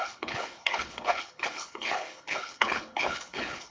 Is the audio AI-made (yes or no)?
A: yes